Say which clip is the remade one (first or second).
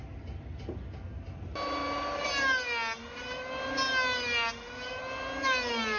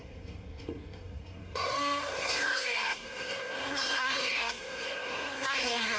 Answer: second